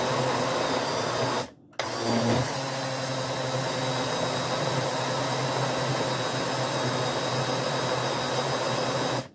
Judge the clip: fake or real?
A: real